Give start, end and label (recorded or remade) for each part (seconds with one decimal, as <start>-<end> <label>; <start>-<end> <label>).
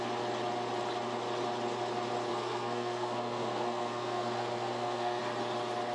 0.0-2.3 recorded; 2.3-5.2 remade; 5.2-5.9 recorded